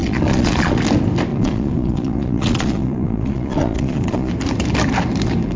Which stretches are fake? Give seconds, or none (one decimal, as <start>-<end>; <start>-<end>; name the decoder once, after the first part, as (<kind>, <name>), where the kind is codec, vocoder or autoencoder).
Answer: 0.0-0.8 (vocoder, Vocos); 1.3-4.3